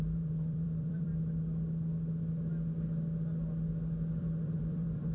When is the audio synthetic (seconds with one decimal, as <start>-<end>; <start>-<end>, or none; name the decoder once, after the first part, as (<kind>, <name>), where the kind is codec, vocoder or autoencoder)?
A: 0.0-1.1 (vocoder, BigVGAN v2); 4.2-5.1